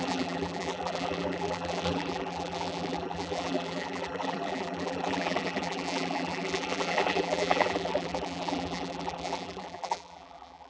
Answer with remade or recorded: remade